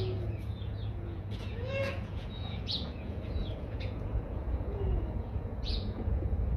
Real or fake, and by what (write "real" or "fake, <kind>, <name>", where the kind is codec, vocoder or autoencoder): fake, vocoder, Vocos